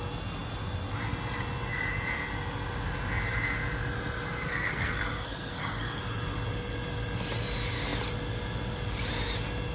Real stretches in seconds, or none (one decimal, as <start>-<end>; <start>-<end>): 0.0-4.5; 6.0-9.7